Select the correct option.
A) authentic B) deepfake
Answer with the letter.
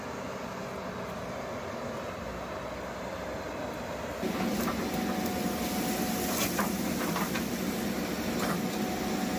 A